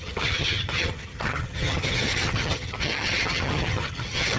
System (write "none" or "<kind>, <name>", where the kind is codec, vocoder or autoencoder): vocoder, HiFi-GAN